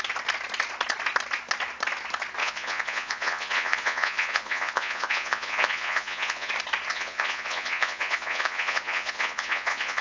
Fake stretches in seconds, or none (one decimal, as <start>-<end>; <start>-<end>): 2.4-6.5; 6.9-10.0